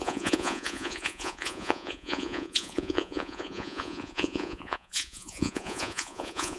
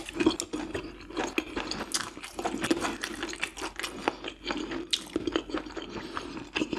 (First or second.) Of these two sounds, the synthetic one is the first